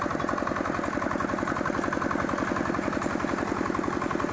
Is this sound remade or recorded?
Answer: recorded